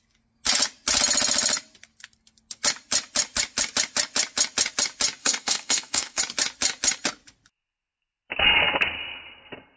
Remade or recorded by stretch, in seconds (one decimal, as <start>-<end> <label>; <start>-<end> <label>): 0.0-5.2 recorded; 5.2-6.2 remade; 6.2-9.8 recorded